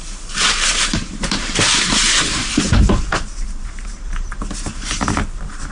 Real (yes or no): no